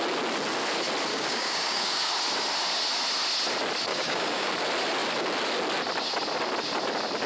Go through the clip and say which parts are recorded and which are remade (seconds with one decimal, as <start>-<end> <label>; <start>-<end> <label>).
0.0-1.1 recorded; 1.1-2.1 remade; 2.1-3.9 recorded; 3.9-4.5 remade; 4.5-7.3 recorded